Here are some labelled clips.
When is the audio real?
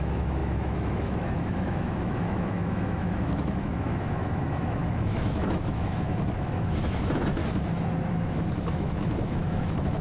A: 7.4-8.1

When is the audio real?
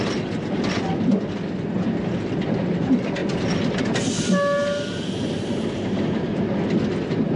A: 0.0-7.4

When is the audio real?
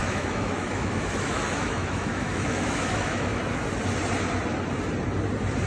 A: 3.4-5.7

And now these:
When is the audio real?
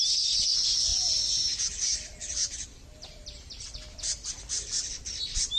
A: 0.0-5.6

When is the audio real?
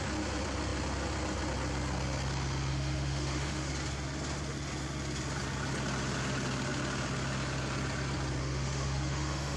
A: 0.0-2.7; 3.7-8.4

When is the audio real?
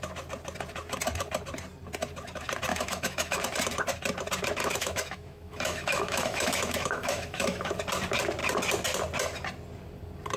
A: 0.0-2.7; 3.4-4.6; 7.7-10.4